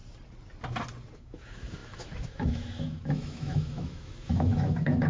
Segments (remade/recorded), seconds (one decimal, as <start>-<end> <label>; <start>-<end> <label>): 0.0-1.2 recorded; 1.2-5.1 remade